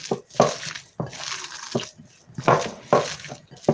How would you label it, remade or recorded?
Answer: recorded